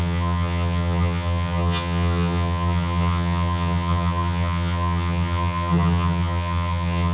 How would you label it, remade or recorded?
remade